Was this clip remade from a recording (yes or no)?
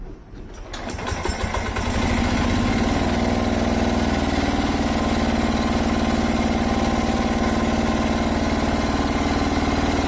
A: no